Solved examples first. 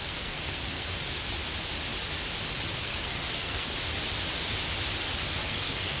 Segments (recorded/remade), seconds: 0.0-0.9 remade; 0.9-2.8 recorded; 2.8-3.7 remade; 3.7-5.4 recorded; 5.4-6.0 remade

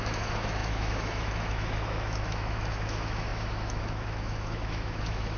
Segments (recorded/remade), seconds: 0.0-5.4 remade

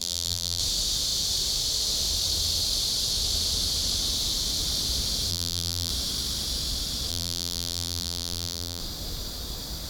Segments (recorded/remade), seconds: 0.0-0.6 remade; 0.6-5.3 recorded; 5.3-5.9 remade; 5.9-7.1 recorded; 7.1-8.8 remade; 8.8-9.9 recorded

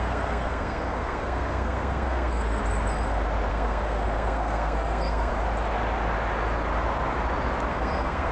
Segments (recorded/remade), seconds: 0.0-2.6 remade; 2.6-3.5 recorded; 3.5-5.3 remade; 5.3-7.7 recorded; 7.7-8.3 remade

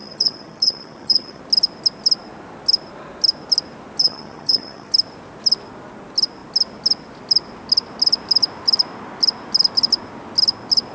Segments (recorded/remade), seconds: 0.0-1.4 remade; 1.4-4.0 recorded; 4.0-4.9 remade; 4.9-10.9 recorded

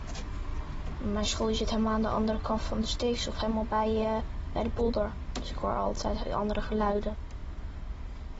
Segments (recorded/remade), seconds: 0.0-8.4 recorded